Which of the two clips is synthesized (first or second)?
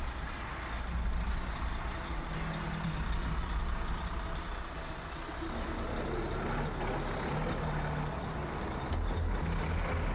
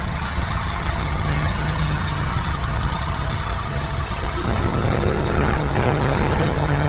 second